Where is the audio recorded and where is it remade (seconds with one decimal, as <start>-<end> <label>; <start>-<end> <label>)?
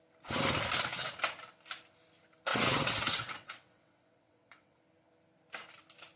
0.0-2.5 recorded; 2.5-4.8 remade; 4.8-6.2 recorded